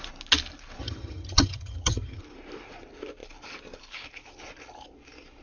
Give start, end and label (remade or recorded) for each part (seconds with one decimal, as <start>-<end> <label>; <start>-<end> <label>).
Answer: 0.0-0.8 recorded; 0.8-2.2 remade; 2.2-5.4 recorded